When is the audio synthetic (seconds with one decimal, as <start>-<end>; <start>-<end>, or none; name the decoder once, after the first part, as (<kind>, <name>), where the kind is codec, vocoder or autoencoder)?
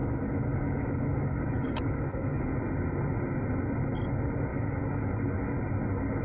0.0-2.5 (autoencoder, DAC-VAE); 4.5-5.1